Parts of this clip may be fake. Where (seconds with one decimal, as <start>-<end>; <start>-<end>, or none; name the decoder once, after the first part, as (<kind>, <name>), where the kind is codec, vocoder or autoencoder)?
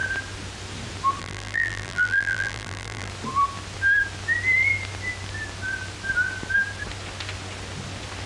1.2-3.1 (vocoder, BigVGAN v2)